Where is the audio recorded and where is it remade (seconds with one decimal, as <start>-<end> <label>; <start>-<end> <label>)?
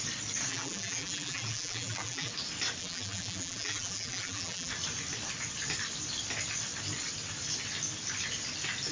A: 0.0-0.5 recorded; 0.5-2.3 remade; 2.3-2.8 recorded; 2.8-4.7 remade; 4.7-8.9 recorded